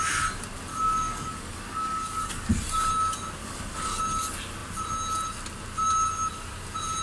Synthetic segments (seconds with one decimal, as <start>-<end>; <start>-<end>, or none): 0.7-2.3; 3.4-4.0